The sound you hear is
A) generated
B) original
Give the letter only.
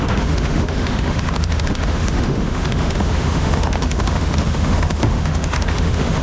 A